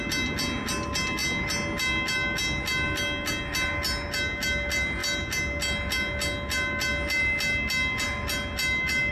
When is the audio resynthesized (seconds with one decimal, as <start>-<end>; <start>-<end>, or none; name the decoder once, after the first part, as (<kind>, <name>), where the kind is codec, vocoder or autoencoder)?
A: none